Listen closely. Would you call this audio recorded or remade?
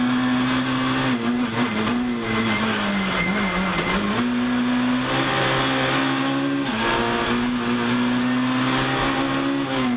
recorded